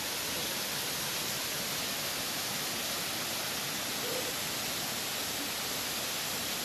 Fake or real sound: real